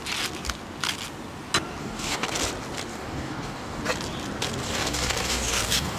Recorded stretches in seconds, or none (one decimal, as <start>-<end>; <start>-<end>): 0.0-1.8; 2.3-2.9; 3.8-4.6